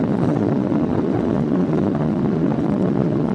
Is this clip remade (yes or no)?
yes